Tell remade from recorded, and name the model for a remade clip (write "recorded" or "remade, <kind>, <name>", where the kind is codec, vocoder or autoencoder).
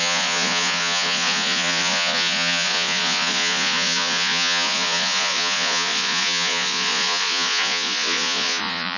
remade, vocoder, Vocos